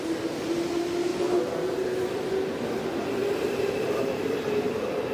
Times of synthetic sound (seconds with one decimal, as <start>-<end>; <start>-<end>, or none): 1.1-1.8; 3.2-5.1